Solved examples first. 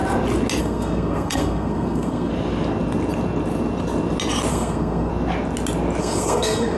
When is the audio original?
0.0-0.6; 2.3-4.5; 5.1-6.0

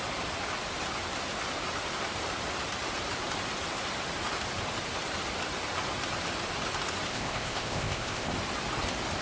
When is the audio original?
0.0-7.1; 8.3-9.2